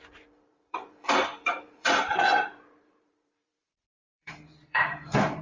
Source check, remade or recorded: remade